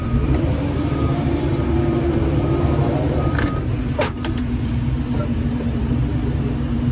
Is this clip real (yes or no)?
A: no